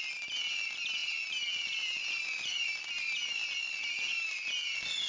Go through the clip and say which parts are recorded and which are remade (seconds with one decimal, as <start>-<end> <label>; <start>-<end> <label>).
0.0-5.1 recorded